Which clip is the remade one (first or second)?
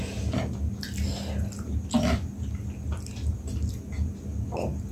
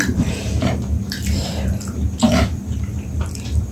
second